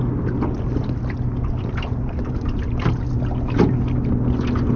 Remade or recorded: recorded